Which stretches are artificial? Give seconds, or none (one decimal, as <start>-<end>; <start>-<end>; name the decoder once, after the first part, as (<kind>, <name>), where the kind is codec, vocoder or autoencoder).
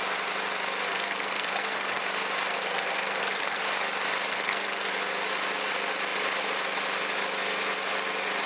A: 0.9-2.0 (codec, SNAC); 2.5-3.6; 4.3-4.9